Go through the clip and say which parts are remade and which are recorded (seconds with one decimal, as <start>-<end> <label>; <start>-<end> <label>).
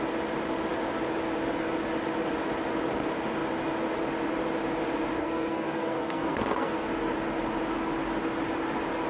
0.0-5.2 recorded; 5.2-6.9 remade; 6.9-9.1 recorded